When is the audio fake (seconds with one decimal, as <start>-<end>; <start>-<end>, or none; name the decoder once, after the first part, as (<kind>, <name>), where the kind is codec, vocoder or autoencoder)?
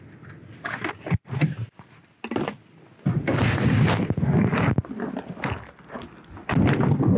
none